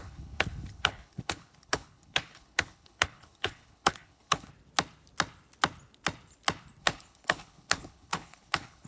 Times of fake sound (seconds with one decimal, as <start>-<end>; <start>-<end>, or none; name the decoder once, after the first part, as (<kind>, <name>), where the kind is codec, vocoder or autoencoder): 0.0-4.5 (codec, HILCodec); 6.8-8.9